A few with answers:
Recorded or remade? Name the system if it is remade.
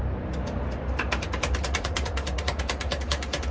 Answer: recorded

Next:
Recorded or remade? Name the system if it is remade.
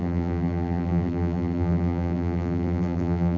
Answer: remade, vocoder, BigVGAN v2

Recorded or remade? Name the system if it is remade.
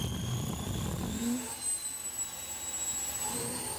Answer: recorded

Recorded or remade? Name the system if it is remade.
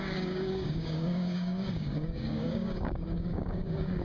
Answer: remade, codec, DAC